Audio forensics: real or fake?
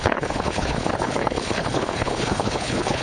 fake